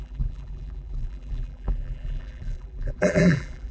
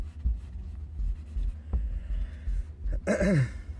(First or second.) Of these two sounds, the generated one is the first